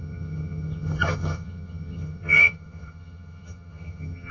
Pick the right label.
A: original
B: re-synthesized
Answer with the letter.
B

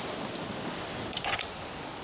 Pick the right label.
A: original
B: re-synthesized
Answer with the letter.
A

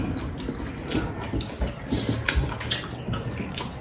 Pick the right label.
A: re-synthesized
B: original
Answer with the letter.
B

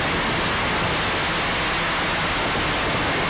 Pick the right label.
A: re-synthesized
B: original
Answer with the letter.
B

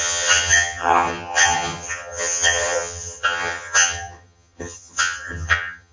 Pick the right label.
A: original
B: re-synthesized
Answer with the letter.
B